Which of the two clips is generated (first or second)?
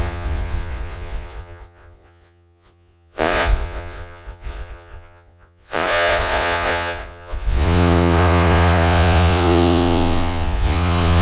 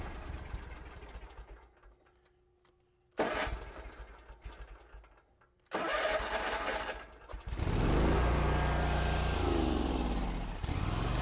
first